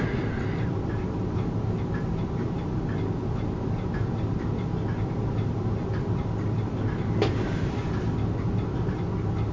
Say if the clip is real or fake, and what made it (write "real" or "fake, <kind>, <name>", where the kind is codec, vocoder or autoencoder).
real